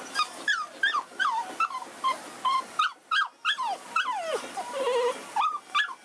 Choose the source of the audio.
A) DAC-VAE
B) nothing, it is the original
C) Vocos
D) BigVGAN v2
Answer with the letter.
D